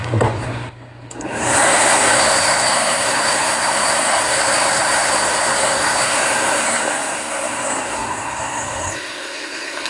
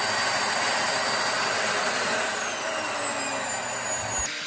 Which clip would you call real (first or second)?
second